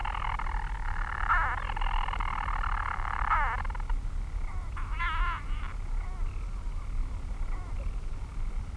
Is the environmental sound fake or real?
real